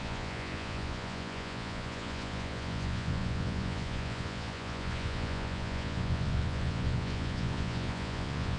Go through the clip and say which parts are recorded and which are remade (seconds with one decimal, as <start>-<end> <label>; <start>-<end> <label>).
0.0-8.6 remade